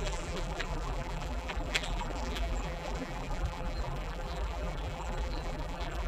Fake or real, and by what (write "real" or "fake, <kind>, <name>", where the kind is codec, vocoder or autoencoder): fake, vocoder, BigVGAN v2